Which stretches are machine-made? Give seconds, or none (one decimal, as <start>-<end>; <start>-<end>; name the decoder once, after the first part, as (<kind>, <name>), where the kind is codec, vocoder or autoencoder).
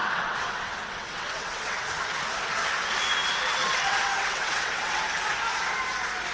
0.0-1.9 (vocoder, WaveNeXt); 3.6-5.0